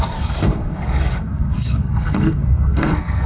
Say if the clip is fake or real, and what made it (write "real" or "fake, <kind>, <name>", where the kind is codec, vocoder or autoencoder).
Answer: fake, codec, SNAC